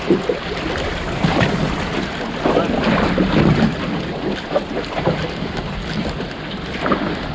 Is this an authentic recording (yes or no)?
yes